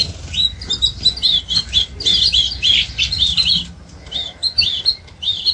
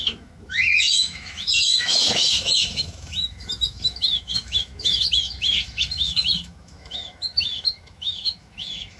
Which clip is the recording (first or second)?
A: first